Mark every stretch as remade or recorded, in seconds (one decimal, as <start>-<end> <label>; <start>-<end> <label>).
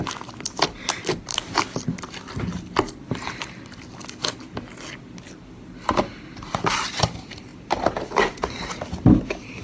0.0-1.3 remade; 1.3-3.0 recorded; 3.0-4.0 remade; 4.0-6.5 recorded; 6.5-9.6 remade